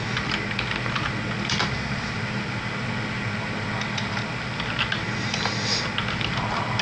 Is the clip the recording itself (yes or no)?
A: yes